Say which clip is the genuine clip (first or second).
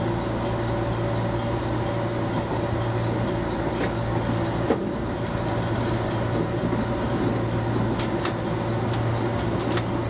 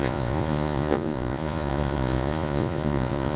first